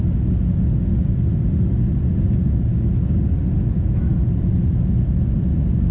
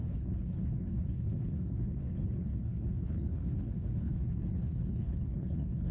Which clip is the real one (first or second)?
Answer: first